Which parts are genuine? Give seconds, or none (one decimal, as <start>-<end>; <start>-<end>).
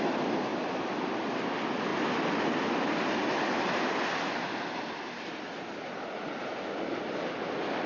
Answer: 0.0-7.9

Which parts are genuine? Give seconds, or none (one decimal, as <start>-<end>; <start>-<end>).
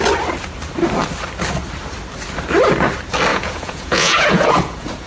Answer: 0.0-3.3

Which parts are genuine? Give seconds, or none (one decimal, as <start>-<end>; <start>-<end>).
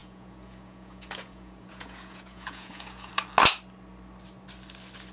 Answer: 3.1-5.1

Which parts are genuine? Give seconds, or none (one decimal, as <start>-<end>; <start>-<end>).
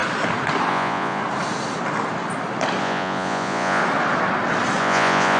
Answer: 0.0-0.7; 1.2-2.8; 3.8-4.8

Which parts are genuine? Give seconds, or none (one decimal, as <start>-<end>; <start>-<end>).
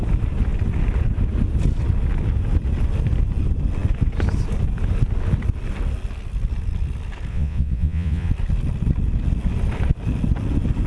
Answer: 0.0-7.3; 8.3-10.9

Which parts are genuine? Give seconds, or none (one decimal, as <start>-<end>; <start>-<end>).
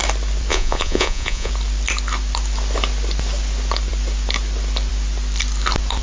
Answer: 0.0-0.5; 1.5-6.0